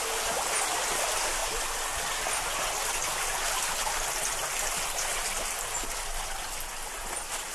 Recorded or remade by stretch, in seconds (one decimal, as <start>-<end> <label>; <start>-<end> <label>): 0.0-1.4 recorded; 1.4-2.7 remade; 2.7-7.5 recorded